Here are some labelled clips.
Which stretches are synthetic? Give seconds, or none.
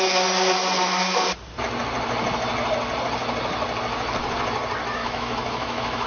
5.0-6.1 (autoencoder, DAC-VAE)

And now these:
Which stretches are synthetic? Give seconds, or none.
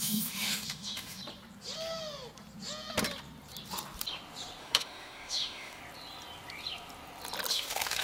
0.0-1.2 (autoencoder, DAC-VAE); 4.6-5.8; 7.5-8.0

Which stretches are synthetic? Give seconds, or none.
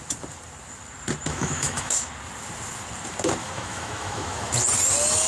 1.3-1.9 (autoencoder, DAC-VAE); 3.4-4.5